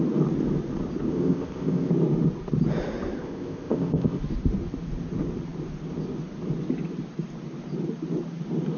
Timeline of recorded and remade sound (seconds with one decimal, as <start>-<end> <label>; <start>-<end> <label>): 0.0-1.1 recorded; 1.1-1.9 remade; 1.9-3.2 recorded; 3.2-4.2 remade; 4.2-8.8 recorded